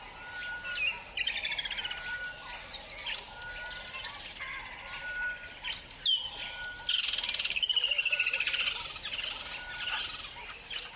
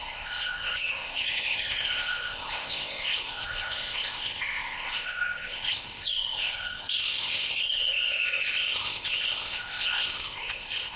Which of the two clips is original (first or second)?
first